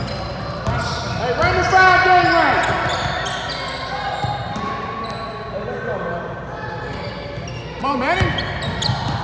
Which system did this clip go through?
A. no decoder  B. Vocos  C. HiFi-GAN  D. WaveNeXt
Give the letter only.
A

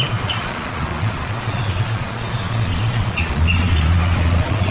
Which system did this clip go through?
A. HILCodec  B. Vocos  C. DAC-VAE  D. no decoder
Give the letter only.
B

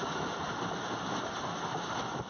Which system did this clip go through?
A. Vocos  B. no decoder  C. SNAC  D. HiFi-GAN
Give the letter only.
B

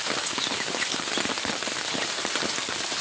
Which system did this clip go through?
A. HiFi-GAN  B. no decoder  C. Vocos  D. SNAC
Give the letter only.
B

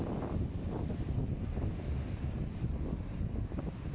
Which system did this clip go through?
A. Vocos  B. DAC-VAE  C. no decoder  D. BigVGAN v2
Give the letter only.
C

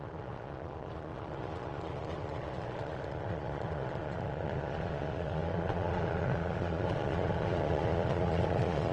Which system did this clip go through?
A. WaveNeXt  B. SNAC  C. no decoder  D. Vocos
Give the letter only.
D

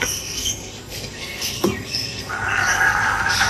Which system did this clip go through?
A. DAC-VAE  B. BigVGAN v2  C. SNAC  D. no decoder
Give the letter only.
C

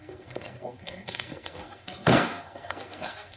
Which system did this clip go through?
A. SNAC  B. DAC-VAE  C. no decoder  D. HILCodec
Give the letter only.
A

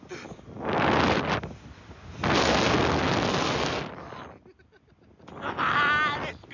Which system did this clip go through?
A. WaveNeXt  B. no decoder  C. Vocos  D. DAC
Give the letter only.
B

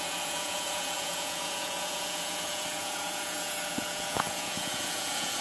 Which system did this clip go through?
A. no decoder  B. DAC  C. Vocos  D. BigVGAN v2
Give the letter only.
C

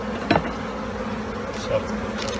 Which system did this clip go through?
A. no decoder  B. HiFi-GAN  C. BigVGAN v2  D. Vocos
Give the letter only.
A